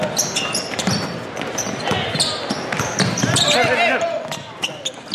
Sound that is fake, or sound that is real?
real